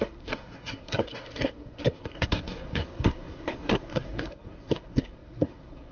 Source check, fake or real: fake